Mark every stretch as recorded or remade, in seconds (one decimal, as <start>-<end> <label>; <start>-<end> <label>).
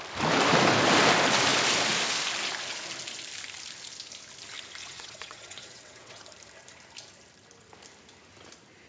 0.0-4.8 recorded; 4.8-6.2 remade; 6.2-8.9 recorded